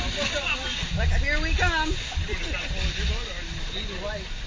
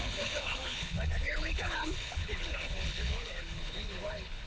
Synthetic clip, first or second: second